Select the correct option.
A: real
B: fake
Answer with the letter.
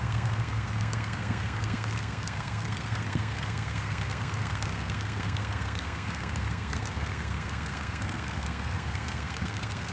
B